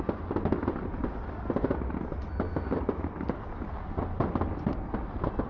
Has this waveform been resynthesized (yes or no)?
no